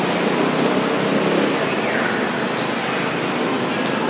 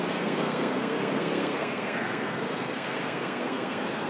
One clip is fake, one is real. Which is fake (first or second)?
second